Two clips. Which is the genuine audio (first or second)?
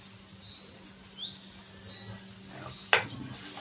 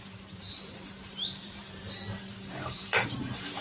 first